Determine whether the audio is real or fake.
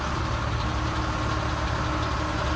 real